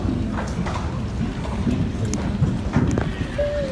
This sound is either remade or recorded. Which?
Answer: recorded